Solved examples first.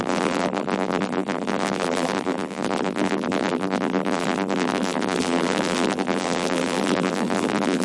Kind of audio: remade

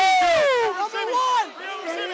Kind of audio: recorded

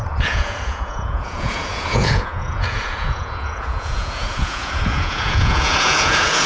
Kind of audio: remade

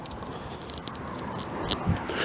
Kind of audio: recorded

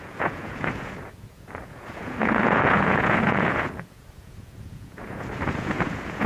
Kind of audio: remade